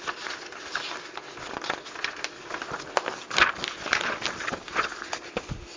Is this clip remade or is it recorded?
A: recorded